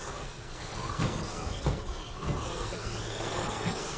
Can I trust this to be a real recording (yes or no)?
no